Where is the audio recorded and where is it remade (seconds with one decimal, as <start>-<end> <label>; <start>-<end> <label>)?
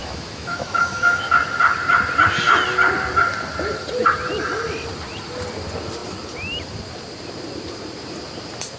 0.0-1.3 remade; 1.3-8.8 recorded